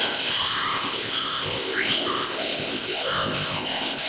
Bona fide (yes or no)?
no